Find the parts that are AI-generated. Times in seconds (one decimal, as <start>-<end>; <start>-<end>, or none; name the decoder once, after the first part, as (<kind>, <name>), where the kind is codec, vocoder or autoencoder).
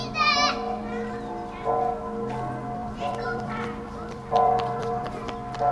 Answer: 2.8-5.1 (vocoder, BigVGAN v2)